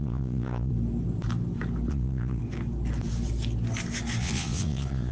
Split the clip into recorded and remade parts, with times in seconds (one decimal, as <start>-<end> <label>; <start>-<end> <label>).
0.0-0.7 remade; 0.7-1.9 recorded; 1.9-2.4 remade; 2.4-4.2 recorded; 4.2-5.1 remade